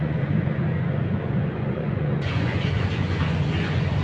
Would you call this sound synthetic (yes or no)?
yes